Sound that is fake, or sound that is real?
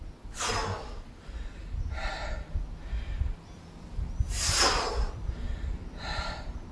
real